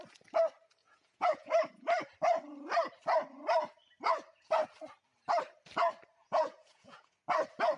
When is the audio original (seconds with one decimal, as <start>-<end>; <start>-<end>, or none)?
0.0-0.8; 1.5-6.2; 7.1-7.8

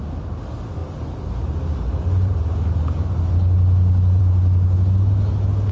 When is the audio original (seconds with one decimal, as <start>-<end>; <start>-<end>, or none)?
0.0-5.7

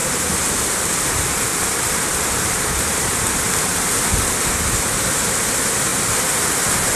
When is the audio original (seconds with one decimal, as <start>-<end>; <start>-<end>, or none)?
none

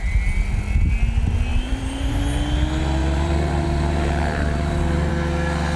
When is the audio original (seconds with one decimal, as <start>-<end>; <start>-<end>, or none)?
0.0-1.5; 2.2-3.0; 5.1-5.8

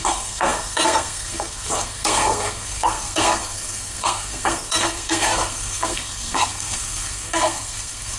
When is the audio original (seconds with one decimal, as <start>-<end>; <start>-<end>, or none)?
none

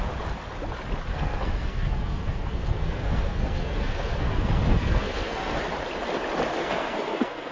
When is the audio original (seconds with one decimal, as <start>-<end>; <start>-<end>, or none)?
0.0-1.1; 5.6-6.6

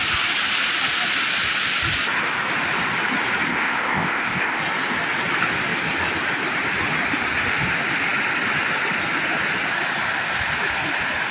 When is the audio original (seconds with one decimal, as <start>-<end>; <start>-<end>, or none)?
0.0-3.5; 4.6-11.3

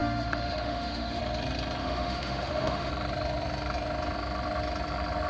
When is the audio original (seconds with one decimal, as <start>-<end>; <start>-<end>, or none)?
1.2-1.8; 2.9-5.3